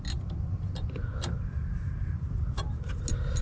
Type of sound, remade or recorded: recorded